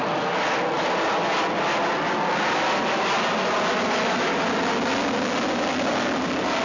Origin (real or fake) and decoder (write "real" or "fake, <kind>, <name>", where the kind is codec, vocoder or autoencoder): real